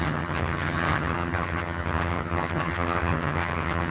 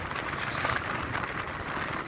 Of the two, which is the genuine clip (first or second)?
second